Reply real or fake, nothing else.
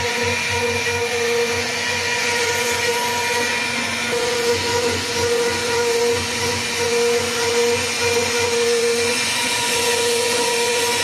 fake